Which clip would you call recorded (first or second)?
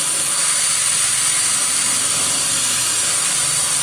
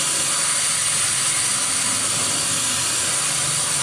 second